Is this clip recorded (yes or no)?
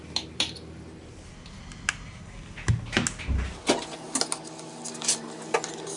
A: yes